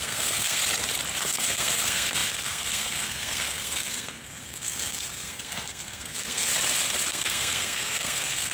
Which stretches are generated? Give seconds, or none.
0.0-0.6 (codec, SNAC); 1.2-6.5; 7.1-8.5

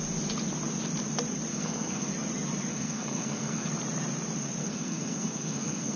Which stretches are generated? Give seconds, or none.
1.5-2.1 (codec, SNAC); 2.7-3.7; 4.6-6.0

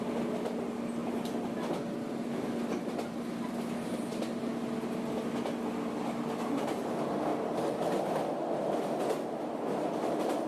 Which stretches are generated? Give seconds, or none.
none

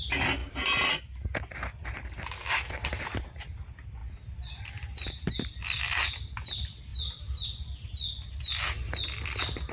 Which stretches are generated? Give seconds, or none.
none